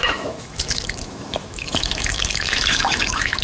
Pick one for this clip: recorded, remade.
remade